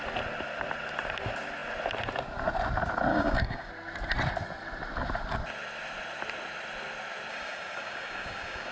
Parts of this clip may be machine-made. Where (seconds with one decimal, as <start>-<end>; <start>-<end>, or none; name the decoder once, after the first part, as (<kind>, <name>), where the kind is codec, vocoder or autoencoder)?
3.1-3.7 (codec, DAC); 7.3-8.7